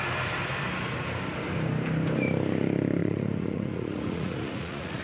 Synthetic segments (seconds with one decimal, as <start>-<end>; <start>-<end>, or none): 3.0-5.0